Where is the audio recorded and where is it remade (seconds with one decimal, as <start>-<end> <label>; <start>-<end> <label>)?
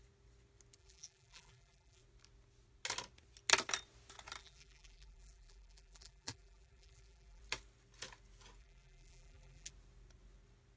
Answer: 0.0-0.8 recorded; 0.8-2.0 remade; 2.0-4.4 recorded; 4.4-7.4 remade; 7.4-8.6 recorded; 8.6-9.7 remade; 9.7-10.8 recorded